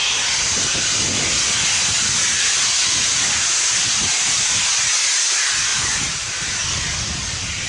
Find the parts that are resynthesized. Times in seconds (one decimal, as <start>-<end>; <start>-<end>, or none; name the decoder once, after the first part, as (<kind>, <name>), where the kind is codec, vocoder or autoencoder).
none